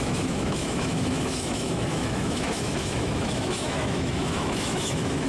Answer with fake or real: fake